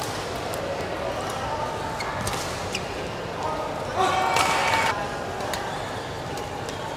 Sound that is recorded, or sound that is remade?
recorded